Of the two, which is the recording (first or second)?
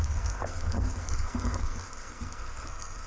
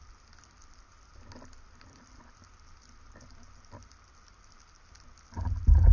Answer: second